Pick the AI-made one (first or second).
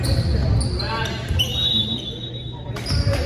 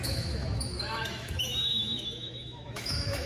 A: second